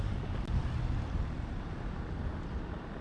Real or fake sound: real